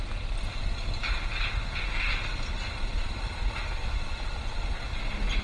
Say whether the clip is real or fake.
real